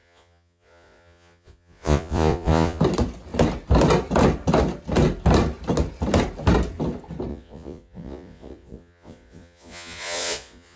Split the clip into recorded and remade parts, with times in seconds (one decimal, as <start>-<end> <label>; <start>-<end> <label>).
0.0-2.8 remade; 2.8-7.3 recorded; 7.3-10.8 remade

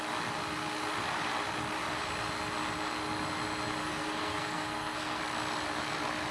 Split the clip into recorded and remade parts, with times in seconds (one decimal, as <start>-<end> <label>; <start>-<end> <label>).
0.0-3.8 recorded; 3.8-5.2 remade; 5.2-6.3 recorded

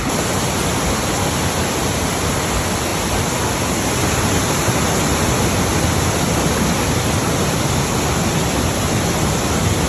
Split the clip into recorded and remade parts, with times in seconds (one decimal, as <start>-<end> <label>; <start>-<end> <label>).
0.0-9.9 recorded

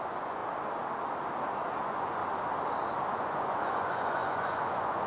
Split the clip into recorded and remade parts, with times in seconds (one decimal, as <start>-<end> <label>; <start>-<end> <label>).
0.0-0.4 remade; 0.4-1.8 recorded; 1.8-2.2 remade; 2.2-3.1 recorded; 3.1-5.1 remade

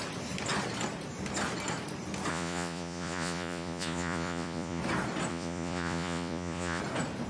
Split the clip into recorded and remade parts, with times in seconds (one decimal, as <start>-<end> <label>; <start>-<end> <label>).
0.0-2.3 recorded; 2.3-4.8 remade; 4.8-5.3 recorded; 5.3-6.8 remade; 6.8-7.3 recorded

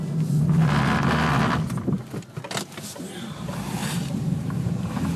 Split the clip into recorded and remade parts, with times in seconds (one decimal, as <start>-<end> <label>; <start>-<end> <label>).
0.0-3.8 recorded; 3.8-5.2 remade

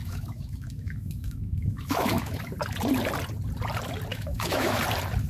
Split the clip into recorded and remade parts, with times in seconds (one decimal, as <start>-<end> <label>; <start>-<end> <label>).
0.0-2.4 remade; 2.4-4.1 recorded; 4.1-4.8 remade; 4.8-5.3 recorded

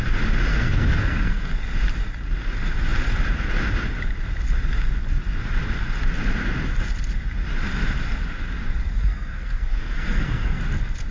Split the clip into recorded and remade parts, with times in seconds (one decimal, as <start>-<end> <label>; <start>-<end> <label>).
0.0-0.5 recorded; 0.5-1.5 remade; 1.5-9.0 recorded; 9.0-10.6 remade; 10.6-11.1 recorded